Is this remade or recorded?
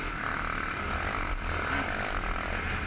recorded